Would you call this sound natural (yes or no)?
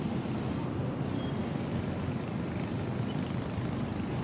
yes